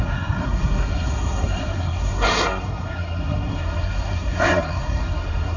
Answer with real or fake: fake